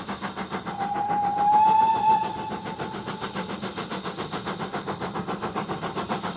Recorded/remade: recorded